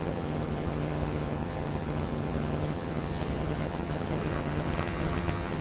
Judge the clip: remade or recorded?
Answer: remade